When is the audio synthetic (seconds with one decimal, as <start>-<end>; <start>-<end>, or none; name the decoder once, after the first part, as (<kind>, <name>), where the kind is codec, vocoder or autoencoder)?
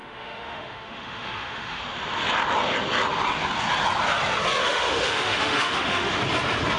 0.0-1.8 (autoencoder, DAC-VAE); 4.6-6.2